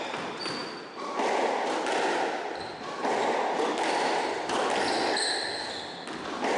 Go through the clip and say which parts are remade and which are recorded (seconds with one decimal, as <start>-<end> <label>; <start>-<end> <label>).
0.0-6.6 recorded